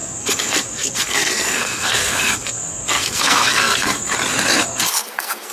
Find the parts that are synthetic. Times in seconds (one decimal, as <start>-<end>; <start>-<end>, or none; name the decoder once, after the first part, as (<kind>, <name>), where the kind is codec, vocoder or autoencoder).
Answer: 0.0-4.0 (codec, SNAC); 4.7-5.5